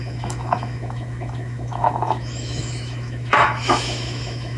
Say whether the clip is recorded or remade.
remade